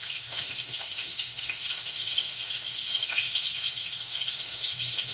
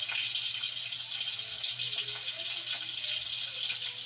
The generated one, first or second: first